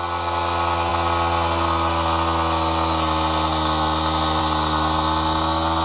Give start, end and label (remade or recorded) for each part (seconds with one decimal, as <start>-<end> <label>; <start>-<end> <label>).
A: 0.0-5.8 recorded

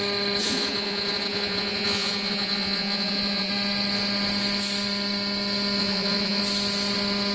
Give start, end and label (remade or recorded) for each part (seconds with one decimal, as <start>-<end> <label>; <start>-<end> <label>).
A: 0.0-0.4 recorded; 0.4-3.5 remade; 3.5-5.8 recorded; 5.8-6.4 remade; 6.4-7.3 recorded

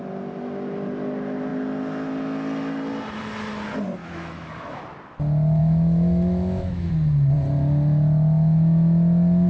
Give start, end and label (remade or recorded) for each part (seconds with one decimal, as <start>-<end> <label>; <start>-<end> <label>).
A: 0.0-4.0 recorded; 4.0-4.8 remade; 4.8-5.6 recorded; 5.6-6.9 remade; 6.9-9.5 recorded

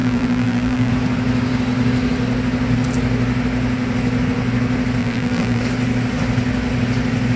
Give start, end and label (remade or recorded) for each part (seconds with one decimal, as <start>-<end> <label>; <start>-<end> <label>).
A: 0.0-0.9 remade; 0.9-5.0 recorded; 5.0-5.6 remade; 5.6-7.4 recorded

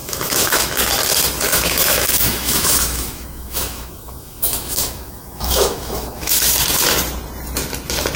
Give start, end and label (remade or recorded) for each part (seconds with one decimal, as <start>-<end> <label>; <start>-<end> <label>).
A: 0.0-0.8 remade; 0.8-1.5 recorded; 1.5-6.4 remade; 6.4-8.2 recorded

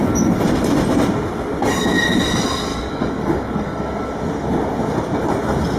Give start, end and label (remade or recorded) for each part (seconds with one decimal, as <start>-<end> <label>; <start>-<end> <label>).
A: 0.0-2.7 recorded; 2.7-4.1 remade; 4.1-5.8 recorded

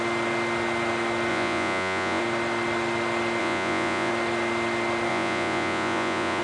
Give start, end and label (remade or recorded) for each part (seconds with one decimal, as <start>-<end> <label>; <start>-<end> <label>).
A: 0.0-1.3 recorded; 1.3-2.2 remade; 2.2-3.4 recorded; 3.4-4.1 remade; 4.1-5.1 recorded; 5.1-6.4 remade

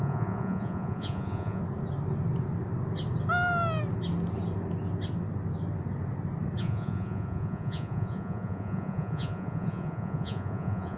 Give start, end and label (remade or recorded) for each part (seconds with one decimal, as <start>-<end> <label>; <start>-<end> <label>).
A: 0.0-1.6 remade; 1.6-6.6 recorded; 6.6-11.0 remade